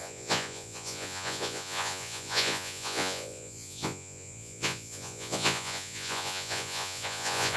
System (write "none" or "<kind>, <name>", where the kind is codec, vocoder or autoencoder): vocoder, Vocos